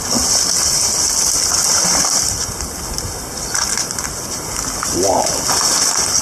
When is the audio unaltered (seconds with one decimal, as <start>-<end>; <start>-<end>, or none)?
0.0-6.2